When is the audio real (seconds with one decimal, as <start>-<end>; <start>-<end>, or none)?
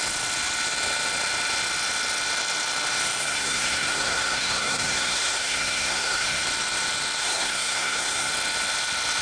0.0-3.2; 6.4-7.2; 8.3-9.2